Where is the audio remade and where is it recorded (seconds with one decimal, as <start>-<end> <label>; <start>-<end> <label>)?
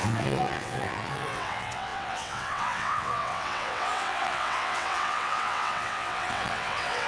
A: 0.0-7.1 remade